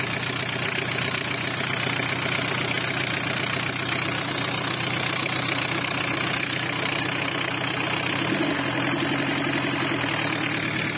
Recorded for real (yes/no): yes